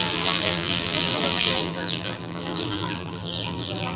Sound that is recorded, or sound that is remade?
remade